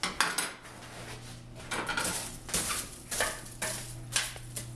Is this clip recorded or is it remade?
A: recorded